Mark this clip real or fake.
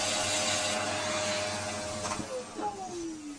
real